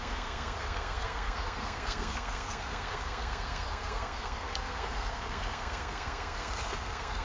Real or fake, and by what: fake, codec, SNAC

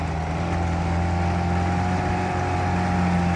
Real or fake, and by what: real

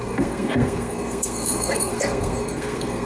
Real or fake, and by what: fake, codec, SNAC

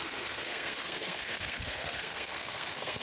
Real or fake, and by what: fake, codec, SNAC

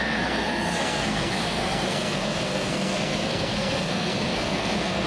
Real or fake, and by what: fake, codec, SNAC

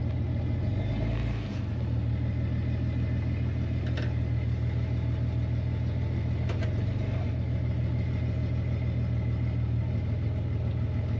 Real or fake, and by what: real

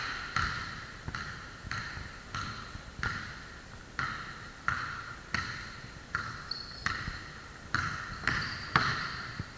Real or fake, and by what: real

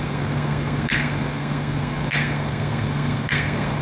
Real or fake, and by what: fake, codec, SNAC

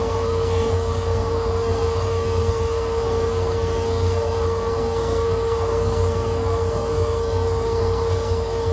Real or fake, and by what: fake, codec, SNAC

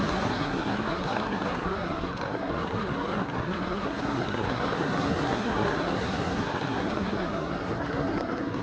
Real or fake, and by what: fake, codec, SNAC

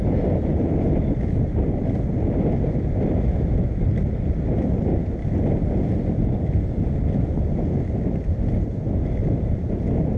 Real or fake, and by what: real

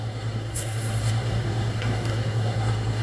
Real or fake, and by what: fake, codec, SNAC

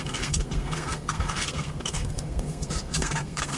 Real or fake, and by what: fake, codec, SNAC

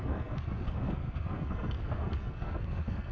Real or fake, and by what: fake, codec, SNAC